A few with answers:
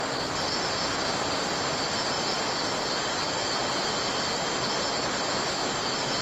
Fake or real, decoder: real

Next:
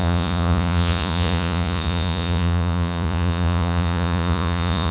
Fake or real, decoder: fake, vocoder, Vocos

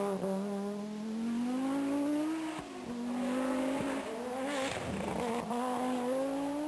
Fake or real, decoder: real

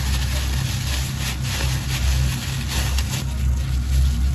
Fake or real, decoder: real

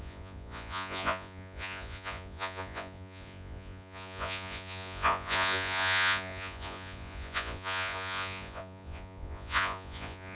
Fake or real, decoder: fake, vocoder, Vocos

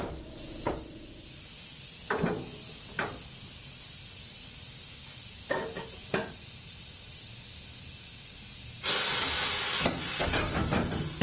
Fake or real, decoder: real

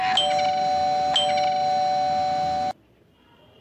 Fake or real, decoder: real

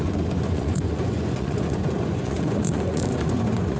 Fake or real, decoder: fake, vocoder, Vocos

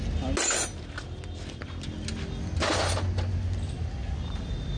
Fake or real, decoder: real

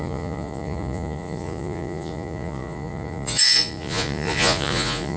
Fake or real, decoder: fake, vocoder, Vocos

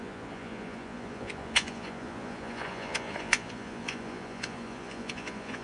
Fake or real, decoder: fake, vocoder, Vocos